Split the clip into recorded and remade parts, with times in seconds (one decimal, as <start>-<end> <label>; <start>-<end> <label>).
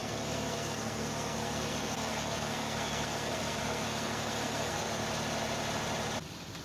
0.0-5.0 remade; 5.0-6.6 recorded